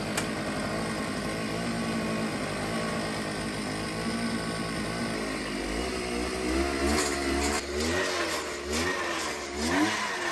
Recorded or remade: recorded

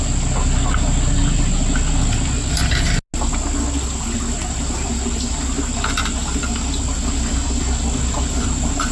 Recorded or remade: recorded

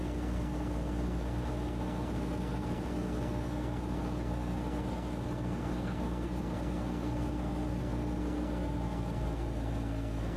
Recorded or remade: remade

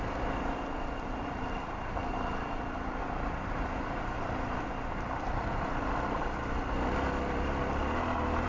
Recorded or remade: recorded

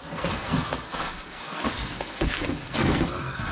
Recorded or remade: remade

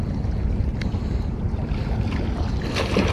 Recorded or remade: recorded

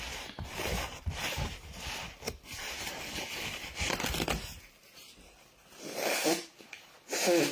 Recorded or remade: recorded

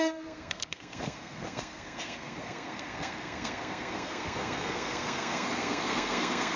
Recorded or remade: remade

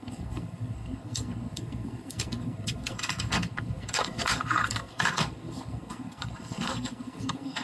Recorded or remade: remade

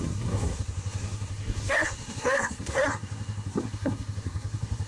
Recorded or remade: remade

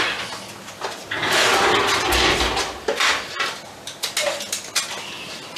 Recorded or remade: recorded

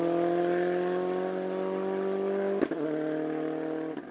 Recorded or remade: recorded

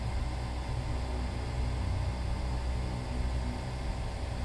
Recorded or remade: recorded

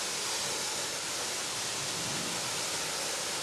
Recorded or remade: recorded